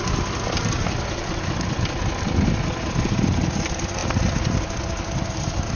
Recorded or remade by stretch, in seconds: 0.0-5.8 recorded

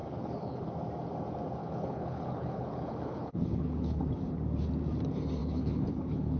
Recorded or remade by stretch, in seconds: 0.0-0.7 remade; 0.7-1.6 recorded; 1.6-4.0 remade; 4.0-5.4 recorded; 5.4-6.4 remade

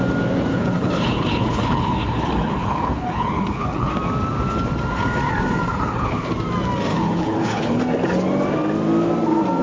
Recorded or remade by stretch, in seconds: 0.0-0.5 recorded; 0.5-3.9 remade; 3.9-5.7 recorded; 5.7-6.3 remade; 6.3-6.9 recorded; 6.9-7.8 remade; 7.8-9.6 recorded